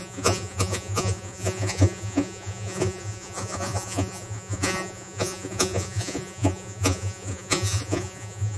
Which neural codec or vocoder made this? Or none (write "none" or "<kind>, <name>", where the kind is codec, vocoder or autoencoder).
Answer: vocoder, Vocos